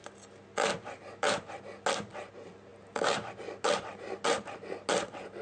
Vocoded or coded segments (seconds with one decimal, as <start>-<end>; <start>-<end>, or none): none